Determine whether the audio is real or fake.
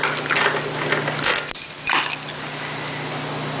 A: real